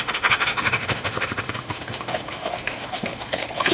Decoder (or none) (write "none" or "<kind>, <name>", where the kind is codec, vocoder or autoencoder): autoencoder, DAC-VAE